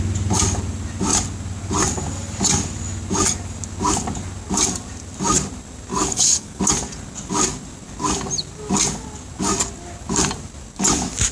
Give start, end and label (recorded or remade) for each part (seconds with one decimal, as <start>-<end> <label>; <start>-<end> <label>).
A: 0.0-5.9 recorded; 5.9-6.6 remade; 6.6-11.3 recorded